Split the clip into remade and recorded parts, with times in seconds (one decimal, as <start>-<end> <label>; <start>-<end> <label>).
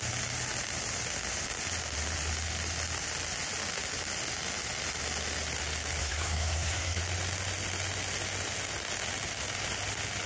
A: 0.0-6.0 recorded; 6.0-7.0 remade; 7.0-10.3 recorded